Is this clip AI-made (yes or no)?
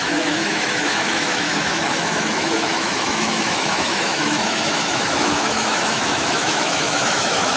yes